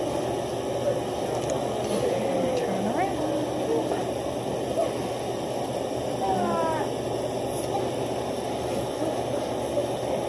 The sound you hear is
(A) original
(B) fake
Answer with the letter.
A